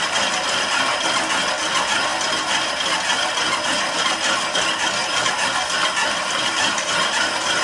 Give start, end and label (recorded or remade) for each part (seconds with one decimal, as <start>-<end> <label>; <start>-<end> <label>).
0.0-5.0 recorded; 5.0-5.5 remade; 5.5-6.0 recorded; 6.0-6.9 remade; 6.9-7.6 recorded